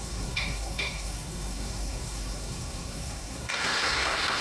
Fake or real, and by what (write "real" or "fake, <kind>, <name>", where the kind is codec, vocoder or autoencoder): fake, codec, SNAC